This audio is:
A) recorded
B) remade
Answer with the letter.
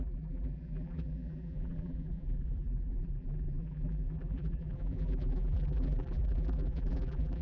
B